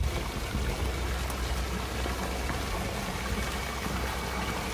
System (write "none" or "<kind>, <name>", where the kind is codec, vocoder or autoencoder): none